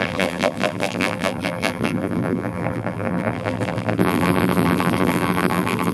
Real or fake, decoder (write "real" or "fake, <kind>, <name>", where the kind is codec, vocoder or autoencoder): fake, vocoder, BigVGAN v2